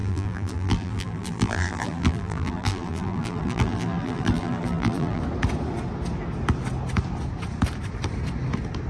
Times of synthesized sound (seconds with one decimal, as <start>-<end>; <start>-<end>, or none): 0.0-5.2

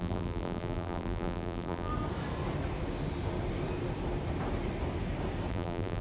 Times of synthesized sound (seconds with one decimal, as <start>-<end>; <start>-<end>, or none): 0.0-1.9; 5.5-6.0